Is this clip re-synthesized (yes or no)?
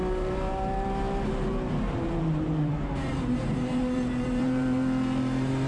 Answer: yes